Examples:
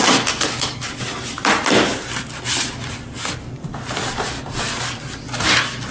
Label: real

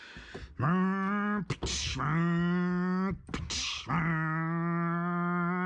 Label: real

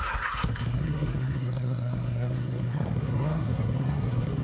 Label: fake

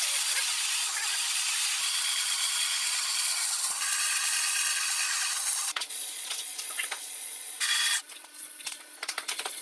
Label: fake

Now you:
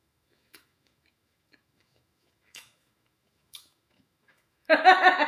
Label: fake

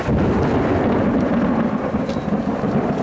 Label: real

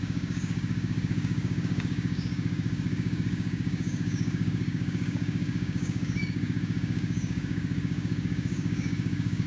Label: fake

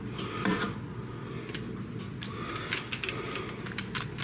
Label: real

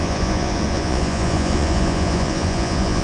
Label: fake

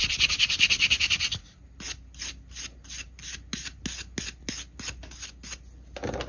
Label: real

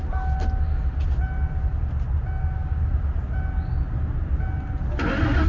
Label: real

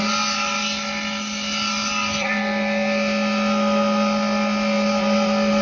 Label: real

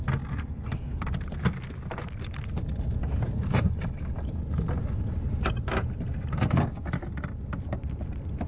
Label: real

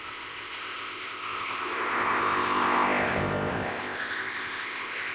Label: fake